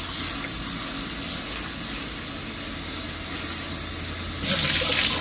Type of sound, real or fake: real